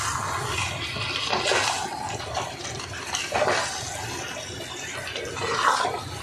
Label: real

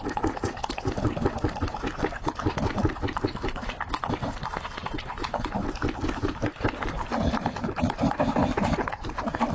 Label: real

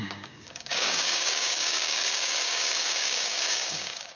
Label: fake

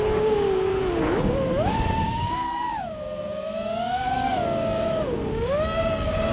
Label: fake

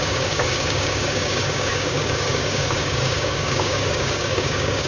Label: fake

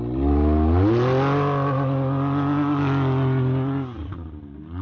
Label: real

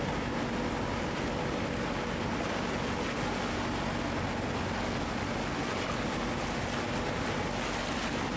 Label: real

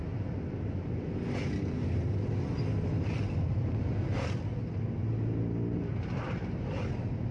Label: real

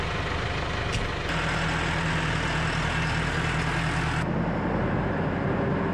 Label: real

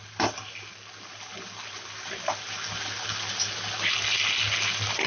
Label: real